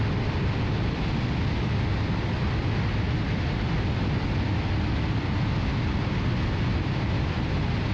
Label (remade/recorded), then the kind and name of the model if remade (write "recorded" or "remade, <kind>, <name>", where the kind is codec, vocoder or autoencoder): recorded